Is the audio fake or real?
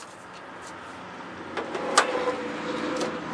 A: real